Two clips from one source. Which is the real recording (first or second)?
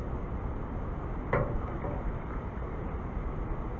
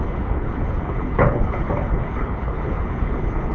first